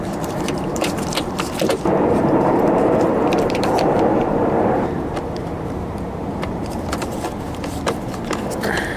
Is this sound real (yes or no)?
no